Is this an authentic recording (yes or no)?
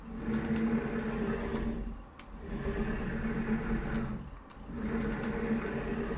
yes